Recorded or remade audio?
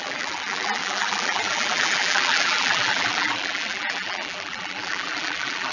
remade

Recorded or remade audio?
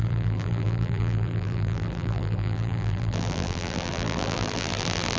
remade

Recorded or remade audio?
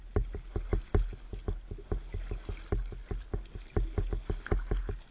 recorded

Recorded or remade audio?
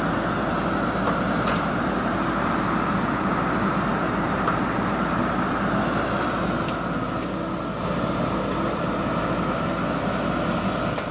recorded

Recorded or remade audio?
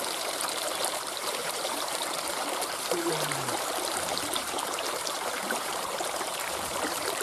remade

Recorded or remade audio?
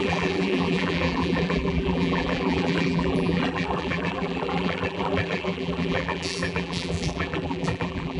remade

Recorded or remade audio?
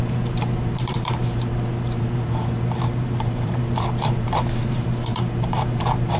remade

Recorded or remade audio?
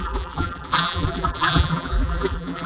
remade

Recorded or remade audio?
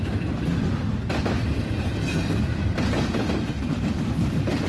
recorded